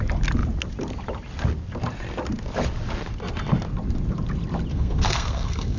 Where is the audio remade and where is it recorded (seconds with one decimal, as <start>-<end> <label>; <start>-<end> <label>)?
0.0-4.7 recorded; 4.7-5.8 remade